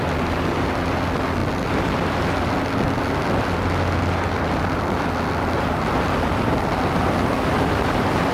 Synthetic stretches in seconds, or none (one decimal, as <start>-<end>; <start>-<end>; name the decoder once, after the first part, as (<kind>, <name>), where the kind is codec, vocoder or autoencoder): none